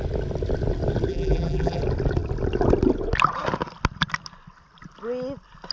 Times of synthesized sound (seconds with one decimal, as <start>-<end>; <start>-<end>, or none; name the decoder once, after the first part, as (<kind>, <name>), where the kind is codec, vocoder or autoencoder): 1.1-1.8 (vocoder, BigVGAN v2)